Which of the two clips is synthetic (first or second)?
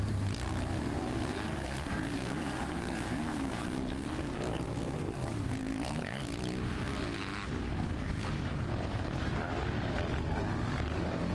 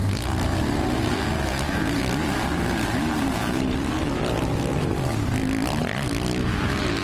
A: first